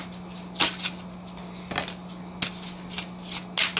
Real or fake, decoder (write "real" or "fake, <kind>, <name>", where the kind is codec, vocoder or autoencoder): real